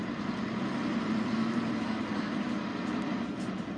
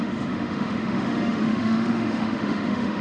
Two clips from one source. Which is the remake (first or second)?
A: second